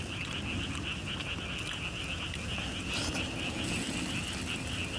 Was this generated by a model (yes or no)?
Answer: no